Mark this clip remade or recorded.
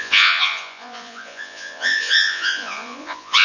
remade